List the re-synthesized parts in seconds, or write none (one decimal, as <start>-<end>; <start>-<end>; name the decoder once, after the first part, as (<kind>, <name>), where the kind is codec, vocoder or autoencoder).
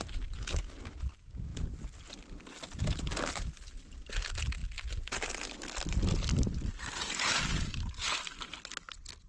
0.0-4.6 (vocoder, BigVGAN v2); 5.3-6.9; 7.5-9.3